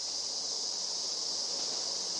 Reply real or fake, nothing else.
real